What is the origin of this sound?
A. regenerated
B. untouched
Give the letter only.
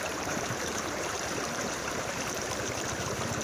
A